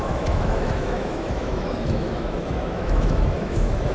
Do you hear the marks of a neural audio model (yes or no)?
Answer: yes